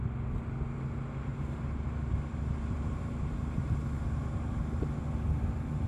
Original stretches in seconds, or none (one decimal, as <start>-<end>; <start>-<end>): 0.0-1.3; 4.8-5.9